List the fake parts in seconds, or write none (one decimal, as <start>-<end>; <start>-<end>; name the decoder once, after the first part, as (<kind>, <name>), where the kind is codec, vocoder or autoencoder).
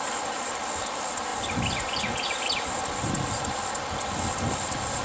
none